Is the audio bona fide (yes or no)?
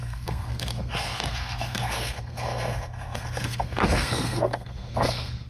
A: no